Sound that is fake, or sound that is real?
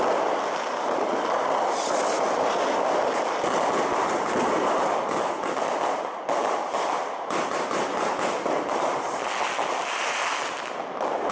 real